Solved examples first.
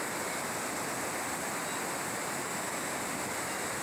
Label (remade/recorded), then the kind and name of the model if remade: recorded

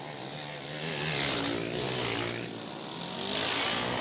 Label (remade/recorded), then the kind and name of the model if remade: recorded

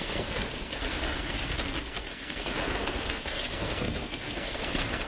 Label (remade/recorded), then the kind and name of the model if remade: remade, codec, SNAC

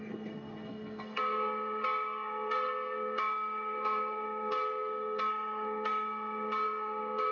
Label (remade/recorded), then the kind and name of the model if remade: remade, codec, SNAC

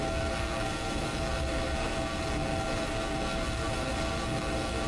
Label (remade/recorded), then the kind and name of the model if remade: remade, codec, SNAC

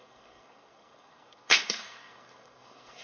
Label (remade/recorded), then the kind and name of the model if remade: remade, codec, SNAC